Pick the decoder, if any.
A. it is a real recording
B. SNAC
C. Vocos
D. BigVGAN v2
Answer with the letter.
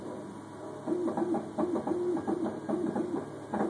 A